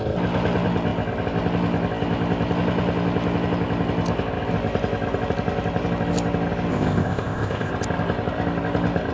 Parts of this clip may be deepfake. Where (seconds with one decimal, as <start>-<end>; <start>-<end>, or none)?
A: 6.7-7.7